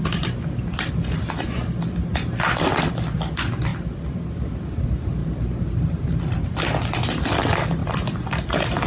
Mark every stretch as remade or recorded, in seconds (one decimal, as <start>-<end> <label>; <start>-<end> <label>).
0.0-3.7 recorded; 3.7-4.4 remade; 4.4-5.2 recorded; 5.2-6.3 remade; 6.3-7.8 recorded; 7.8-8.3 remade; 8.3-8.9 recorded